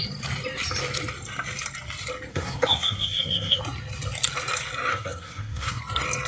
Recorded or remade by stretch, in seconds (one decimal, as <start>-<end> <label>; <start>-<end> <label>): 0.0-2.3 recorded; 2.3-3.6 remade; 3.6-4.9 recorded; 4.9-5.8 remade; 5.8-6.3 recorded